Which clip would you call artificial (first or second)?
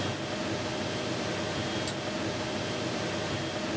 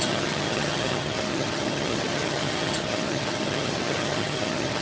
second